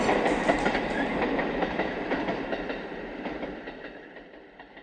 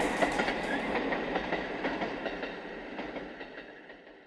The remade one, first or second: first